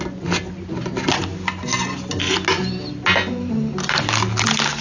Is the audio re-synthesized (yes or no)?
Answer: no